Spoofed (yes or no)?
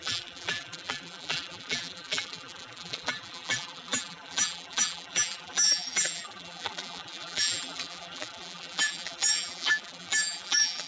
yes